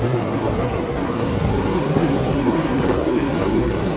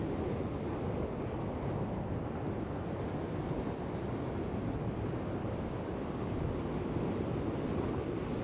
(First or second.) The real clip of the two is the second